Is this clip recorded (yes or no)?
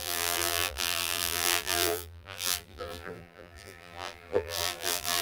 no